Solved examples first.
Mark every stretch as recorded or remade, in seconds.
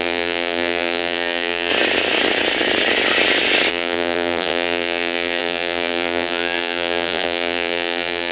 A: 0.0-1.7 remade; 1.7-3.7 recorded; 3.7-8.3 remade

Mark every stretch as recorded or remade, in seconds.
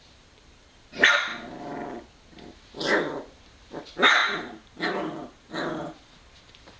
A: 0.0-1.3 remade; 1.3-3.4 recorded; 3.4-6.8 remade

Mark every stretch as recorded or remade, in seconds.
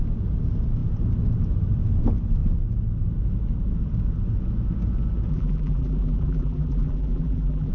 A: 0.0-5.3 recorded; 5.3-7.7 remade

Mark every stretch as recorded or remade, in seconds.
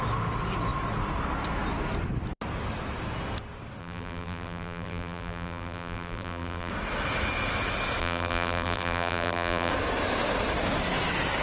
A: 0.0-3.8 recorded; 3.8-6.7 remade; 6.7-8.0 recorded; 8.0-9.7 remade; 9.7-11.4 recorded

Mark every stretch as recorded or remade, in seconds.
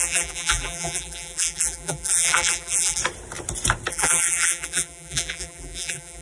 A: 0.0-3.0 remade; 3.0-3.9 recorded; 3.9-6.2 remade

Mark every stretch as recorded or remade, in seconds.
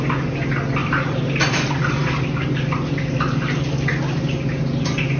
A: 0.0-0.8 recorded; 0.8-3.9 remade; 3.9-5.2 recorded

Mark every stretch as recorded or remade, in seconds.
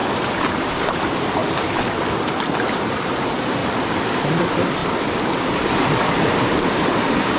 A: 0.0-0.6 recorded; 0.6-1.4 remade; 1.4-2.7 recorded; 2.7-3.6 remade; 3.6-4.2 recorded; 4.2-4.8 remade; 4.8-5.7 recorded; 5.7-7.4 remade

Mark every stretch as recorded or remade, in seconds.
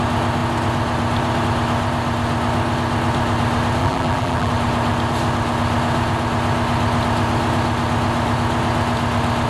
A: 0.0-3.8 recorded; 3.8-4.5 remade; 4.5-9.5 recorded